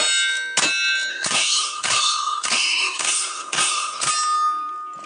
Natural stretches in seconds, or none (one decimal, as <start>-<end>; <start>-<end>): 0.0-1.1; 4.1-5.1